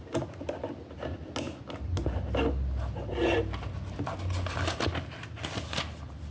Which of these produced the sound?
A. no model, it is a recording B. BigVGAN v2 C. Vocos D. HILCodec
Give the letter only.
A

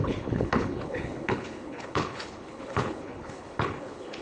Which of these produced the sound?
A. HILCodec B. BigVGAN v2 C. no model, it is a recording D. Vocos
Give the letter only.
A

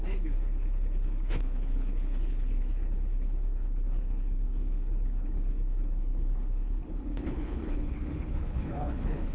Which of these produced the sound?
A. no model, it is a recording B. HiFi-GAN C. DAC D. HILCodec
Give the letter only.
D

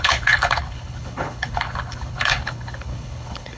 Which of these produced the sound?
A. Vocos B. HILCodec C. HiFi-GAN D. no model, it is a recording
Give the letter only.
B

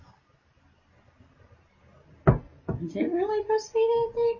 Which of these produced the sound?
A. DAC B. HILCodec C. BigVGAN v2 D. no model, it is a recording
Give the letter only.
D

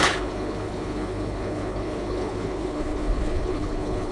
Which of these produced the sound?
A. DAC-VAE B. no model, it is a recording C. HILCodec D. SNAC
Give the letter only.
C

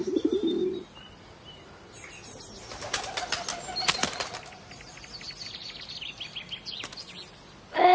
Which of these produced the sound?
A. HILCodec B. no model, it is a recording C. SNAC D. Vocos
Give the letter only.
B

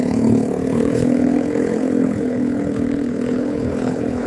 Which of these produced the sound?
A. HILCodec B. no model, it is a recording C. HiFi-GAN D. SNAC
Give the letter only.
A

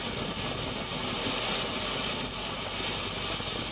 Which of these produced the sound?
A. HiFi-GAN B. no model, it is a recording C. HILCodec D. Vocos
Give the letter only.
B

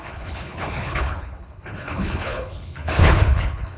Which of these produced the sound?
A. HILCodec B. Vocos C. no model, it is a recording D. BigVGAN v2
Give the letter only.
A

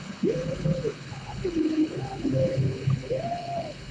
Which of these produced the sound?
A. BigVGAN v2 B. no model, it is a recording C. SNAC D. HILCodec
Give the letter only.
D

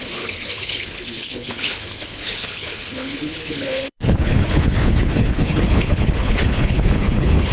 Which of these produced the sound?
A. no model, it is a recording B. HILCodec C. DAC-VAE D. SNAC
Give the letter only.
B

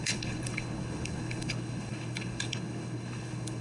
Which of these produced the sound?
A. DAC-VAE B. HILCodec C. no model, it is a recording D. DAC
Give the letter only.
B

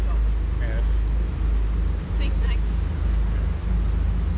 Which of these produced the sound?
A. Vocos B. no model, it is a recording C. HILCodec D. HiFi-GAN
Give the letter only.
B